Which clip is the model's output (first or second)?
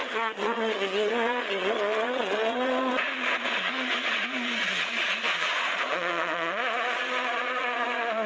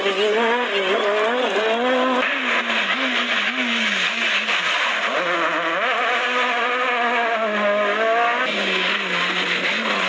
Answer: first